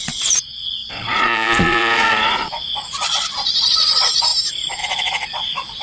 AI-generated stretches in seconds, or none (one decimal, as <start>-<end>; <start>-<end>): 0.0-4.3; 4.8-5.8